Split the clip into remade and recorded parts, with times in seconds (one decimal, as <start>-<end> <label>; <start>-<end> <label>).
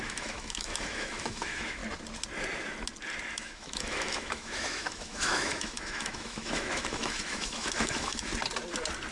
0.0-1.8 remade; 1.8-3.3 recorded; 3.3-8.3 remade; 8.3-9.1 recorded